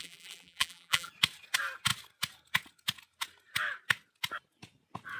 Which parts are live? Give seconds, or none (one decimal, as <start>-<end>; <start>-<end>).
1.1-5.2